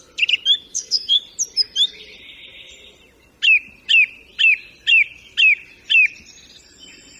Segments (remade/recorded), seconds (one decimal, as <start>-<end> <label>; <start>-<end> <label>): 0.0-0.7 recorded; 0.7-1.2 remade; 1.2-7.2 recorded